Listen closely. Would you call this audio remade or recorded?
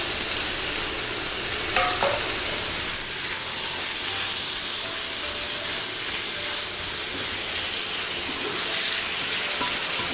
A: recorded